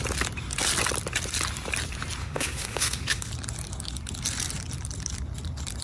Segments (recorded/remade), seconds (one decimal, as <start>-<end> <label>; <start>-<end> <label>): 0.0-2.2 recorded; 2.2-3.3 remade; 3.3-5.8 recorded

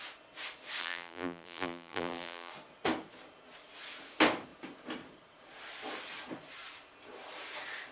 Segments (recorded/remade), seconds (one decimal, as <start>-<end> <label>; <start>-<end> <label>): 0.0-0.8 recorded; 0.8-2.5 remade; 2.5-7.9 recorded

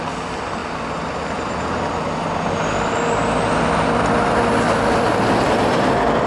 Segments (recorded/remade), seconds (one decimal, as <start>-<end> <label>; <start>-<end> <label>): 0.0-6.3 recorded

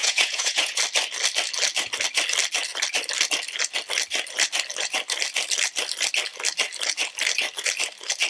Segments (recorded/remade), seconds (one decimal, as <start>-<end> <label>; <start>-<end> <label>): 0.0-0.8 remade; 0.8-8.3 recorded

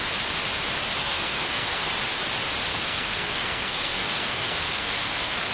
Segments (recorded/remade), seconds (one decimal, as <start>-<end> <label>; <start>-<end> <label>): 0.0-1.0 recorded; 1.0-1.9 remade; 1.9-2.7 recorded; 2.7-5.5 remade

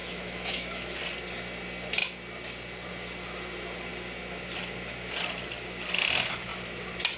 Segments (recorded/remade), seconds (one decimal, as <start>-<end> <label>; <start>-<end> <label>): 0.0-1.0 remade; 1.0-7.2 recorded

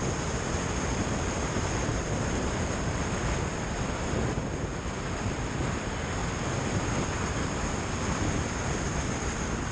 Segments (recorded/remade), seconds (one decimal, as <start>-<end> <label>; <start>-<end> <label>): 0.0-4.7 recorded; 4.7-5.4 remade; 5.4-9.7 recorded

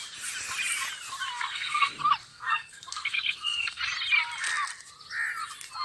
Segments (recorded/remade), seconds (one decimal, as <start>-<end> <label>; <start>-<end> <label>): 0.0-1.3 recorded; 1.3-1.9 remade; 1.9-2.3 recorded; 2.3-3.8 remade; 3.8-5.8 recorded